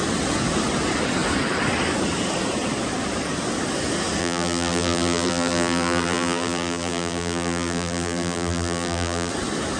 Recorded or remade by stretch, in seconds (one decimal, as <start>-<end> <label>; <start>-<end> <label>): 0.0-4.2 recorded; 4.2-9.3 remade; 9.3-9.8 recorded